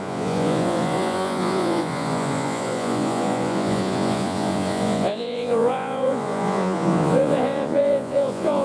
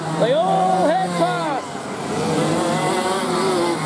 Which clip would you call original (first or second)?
second